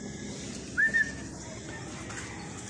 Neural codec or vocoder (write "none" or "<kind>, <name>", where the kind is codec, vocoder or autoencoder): none